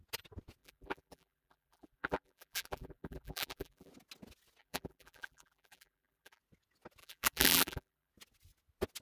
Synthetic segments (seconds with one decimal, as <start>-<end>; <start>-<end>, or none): 0.6-3.9; 4.6-6.4; 7.0-8.1